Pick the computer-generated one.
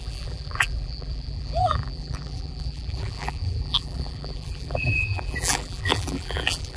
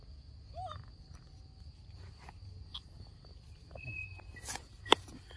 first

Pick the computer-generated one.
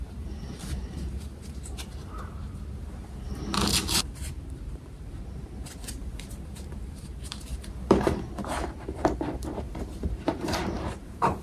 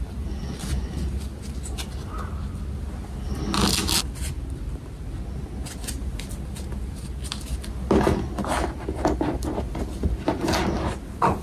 first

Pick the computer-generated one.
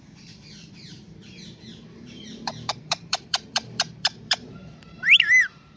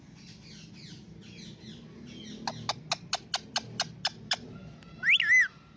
first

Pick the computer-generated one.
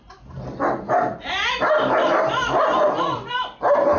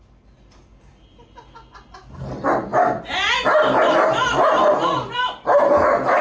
first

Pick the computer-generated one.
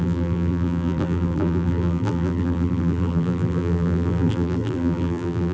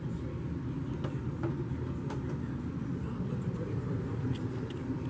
first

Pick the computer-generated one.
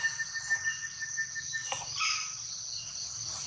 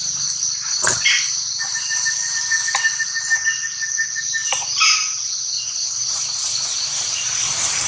second